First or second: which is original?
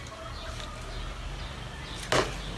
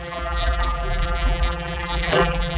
first